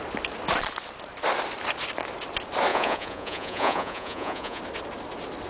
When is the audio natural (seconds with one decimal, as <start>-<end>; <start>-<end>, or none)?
0.0-2.7; 4.6-5.5